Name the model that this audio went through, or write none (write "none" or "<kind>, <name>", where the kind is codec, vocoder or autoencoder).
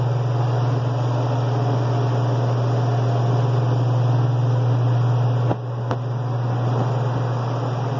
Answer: none